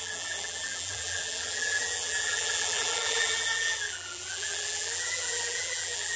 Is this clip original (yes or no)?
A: no